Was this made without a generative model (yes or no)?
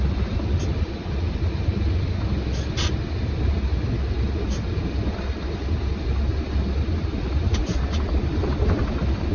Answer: yes